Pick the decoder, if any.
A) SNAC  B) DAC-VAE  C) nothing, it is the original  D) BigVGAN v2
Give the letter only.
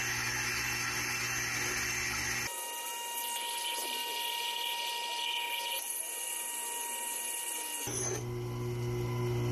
C